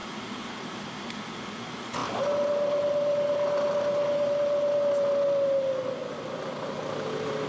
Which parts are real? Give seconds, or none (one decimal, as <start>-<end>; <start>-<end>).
0.0-7.5